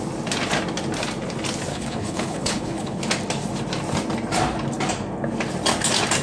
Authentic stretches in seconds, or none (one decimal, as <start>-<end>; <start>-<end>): 0.0-1.7; 3.0-6.2

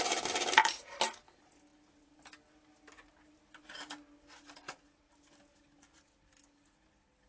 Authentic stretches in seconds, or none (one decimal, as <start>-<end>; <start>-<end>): 0.0-7.3